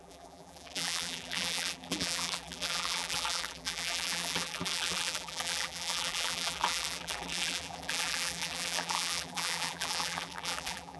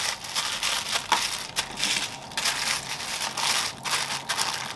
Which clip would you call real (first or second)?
second